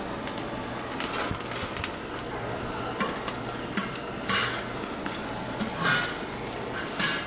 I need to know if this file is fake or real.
real